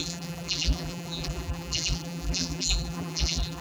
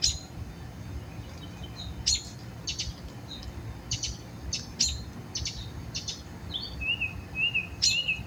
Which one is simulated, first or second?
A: first